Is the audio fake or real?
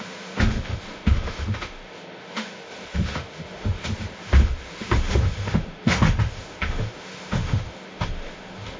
fake